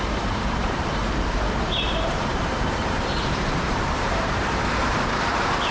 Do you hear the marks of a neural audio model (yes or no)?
yes